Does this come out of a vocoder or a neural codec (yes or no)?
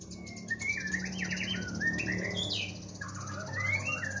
no